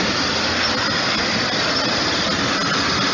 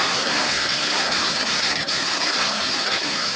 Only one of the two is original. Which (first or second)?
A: first